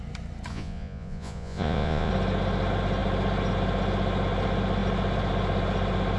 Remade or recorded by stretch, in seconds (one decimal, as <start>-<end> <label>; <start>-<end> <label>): 0.0-0.5 recorded; 0.5-2.1 remade; 2.1-6.2 recorded